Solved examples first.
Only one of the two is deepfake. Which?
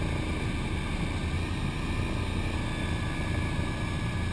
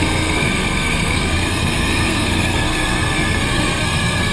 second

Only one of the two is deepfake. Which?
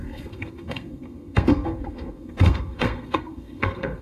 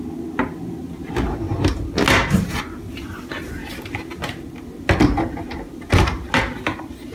first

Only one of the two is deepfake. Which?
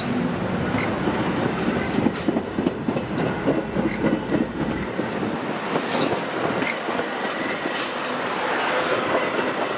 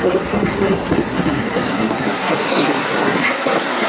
second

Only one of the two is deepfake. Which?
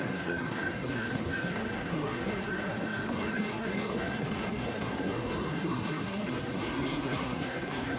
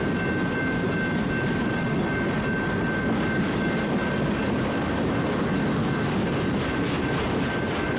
first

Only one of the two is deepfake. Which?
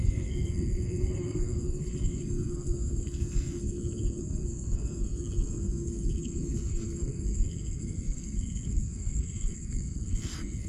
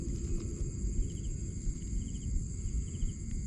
first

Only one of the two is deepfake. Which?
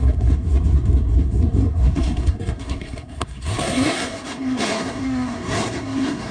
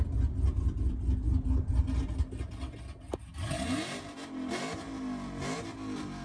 first